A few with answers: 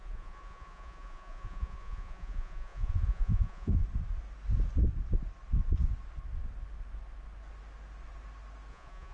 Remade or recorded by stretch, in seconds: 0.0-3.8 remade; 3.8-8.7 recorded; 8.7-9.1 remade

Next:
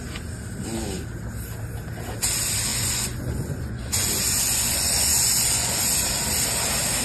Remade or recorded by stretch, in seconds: 0.0-2.7 recorded; 2.7-5.8 remade; 5.8-7.0 recorded

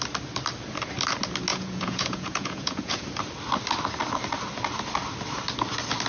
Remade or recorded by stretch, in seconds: 0.0-1.5 recorded; 1.5-3.0 remade; 3.0-6.1 recorded

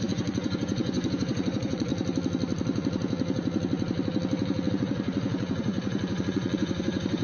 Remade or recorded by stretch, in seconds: 0.0-1.9 remade; 1.9-4.7 recorded; 4.7-7.2 remade